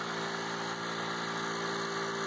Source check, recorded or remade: recorded